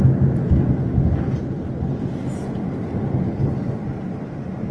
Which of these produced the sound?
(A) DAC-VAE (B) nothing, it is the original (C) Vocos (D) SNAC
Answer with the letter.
B